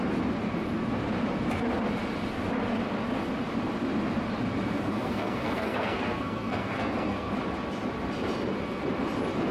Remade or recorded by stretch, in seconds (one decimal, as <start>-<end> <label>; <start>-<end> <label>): 0.0-4.9 recorded; 4.9-7.3 remade; 7.3-9.5 recorded